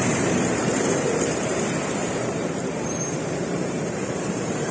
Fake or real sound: fake